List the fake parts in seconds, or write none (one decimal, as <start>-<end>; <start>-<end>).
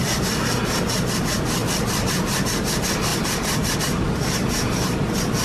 1.6-2.1; 3.1-3.8